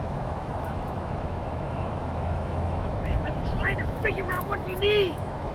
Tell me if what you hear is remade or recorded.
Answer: remade